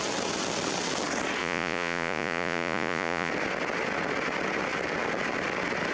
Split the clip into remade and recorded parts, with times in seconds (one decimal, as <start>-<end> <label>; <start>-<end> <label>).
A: 0.0-1.4 recorded; 1.4-3.3 remade; 3.3-5.9 recorded